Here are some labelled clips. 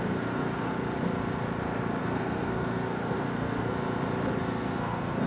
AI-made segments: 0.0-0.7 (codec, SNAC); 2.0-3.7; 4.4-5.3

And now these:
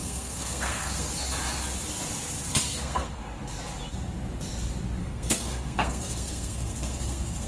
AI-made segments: 0.0-1.1 (codec, SNAC); 2.7-3.2; 5.0-7.5

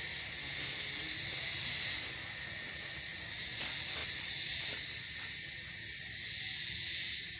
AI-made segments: 3.1-3.6 (vocoder, BigVGAN v2); 4.0-5.2

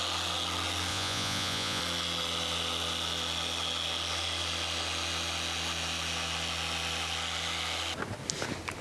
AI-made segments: 0.9-1.8 (vocoder, Vocos)

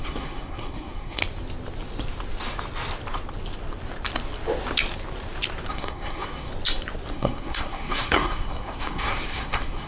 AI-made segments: 0.0-1.2 (codec, SNAC); 5.7-6.5; 7.1-9.9

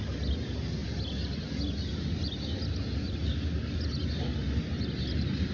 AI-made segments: none